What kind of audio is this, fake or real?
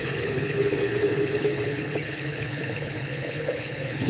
fake